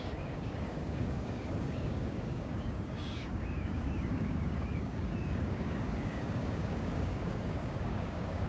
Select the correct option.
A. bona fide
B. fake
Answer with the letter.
B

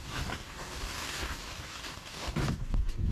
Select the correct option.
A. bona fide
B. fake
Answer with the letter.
B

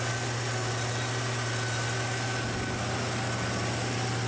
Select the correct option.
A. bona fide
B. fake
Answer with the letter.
A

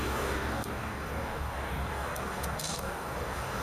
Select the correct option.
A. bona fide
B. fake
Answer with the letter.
B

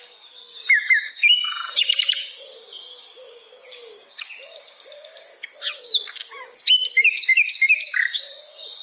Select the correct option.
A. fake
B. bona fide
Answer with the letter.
A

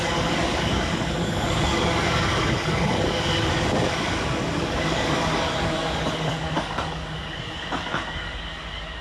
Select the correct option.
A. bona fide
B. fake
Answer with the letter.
B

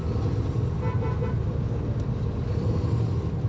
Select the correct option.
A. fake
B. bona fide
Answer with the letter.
B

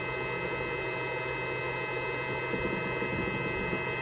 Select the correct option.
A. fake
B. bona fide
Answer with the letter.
B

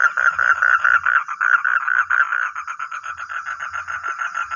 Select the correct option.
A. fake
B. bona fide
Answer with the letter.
B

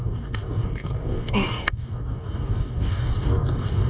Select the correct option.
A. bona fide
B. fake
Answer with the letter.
B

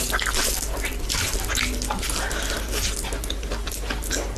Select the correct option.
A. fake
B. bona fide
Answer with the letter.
B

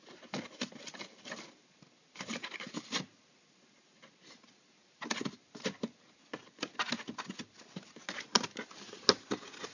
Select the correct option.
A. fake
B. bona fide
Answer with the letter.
B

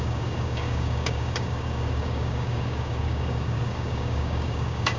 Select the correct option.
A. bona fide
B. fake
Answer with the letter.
B